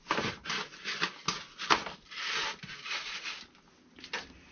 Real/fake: real